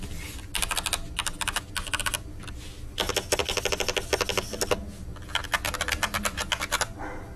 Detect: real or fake real